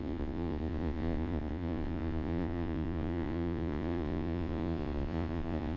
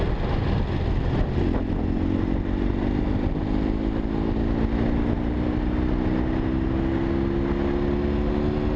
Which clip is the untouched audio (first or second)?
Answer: second